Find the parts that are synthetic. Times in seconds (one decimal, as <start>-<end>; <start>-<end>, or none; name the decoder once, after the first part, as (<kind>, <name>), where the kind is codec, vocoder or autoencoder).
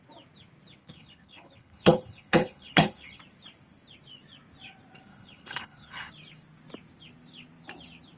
0.8-3.2 (codec, HILCodec); 5.1-6.1